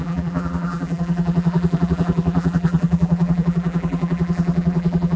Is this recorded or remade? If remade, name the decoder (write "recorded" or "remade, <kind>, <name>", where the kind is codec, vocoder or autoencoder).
remade, vocoder, BigVGAN v2